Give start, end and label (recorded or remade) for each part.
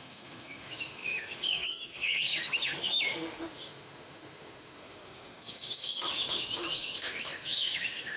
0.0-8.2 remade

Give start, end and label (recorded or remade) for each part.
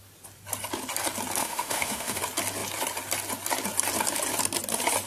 0.0-1.4 recorded; 1.4-2.2 remade; 2.2-5.1 recorded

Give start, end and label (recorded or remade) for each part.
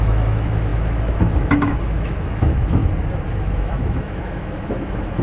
0.0-2.8 remade; 2.8-3.3 recorded; 3.3-5.2 remade